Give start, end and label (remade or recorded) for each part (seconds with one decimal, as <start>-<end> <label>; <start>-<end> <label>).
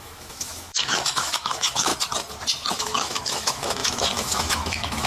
0.0-1.9 remade; 1.9-2.8 recorded; 2.8-5.1 remade